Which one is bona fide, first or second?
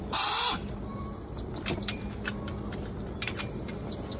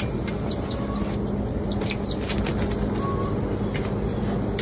second